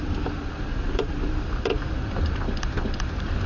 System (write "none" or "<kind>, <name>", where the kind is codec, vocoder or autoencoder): vocoder, BigVGAN v2